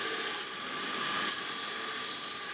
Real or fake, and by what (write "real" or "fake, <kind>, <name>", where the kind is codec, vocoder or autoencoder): real